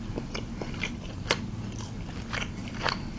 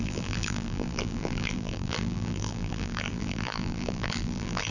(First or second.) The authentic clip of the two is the first